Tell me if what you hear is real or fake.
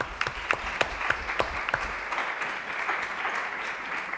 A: real